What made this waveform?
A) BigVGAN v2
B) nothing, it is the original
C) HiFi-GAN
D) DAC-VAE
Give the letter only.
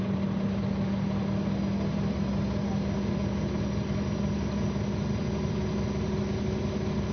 B